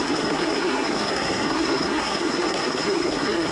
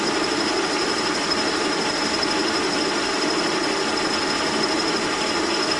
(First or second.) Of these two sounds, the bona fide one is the second